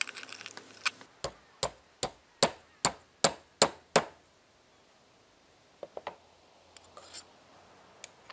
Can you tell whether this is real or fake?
real